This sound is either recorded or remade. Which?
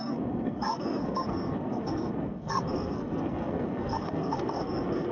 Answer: remade